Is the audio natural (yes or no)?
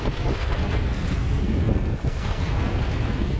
no